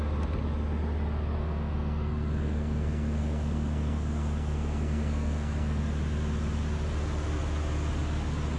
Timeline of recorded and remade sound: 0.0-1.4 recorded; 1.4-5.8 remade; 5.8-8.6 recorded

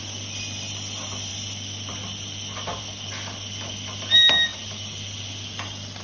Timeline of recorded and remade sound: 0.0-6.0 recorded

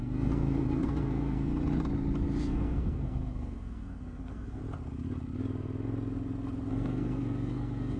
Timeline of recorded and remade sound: 0.0-1.5 remade; 1.5-2.4 recorded; 2.4-4.6 remade; 4.6-6.7 recorded; 6.7-8.0 remade

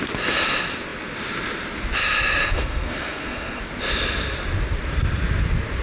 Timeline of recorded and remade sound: 0.0-2.4 recorded; 2.4-3.6 remade; 3.6-5.8 recorded

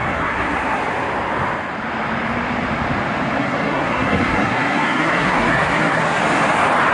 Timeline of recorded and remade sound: 0.0-0.8 remade; 0.8-3.4 recorded; 3.4-6.2 remade; 6.2-6.9 recorded

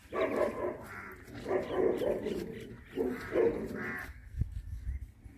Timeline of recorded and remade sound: 0.0-4.1 recorded; 4.1-4.8 remade; 4.8-5.4 recorded

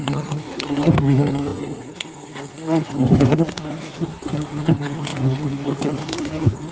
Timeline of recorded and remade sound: 0.0-6.7 remade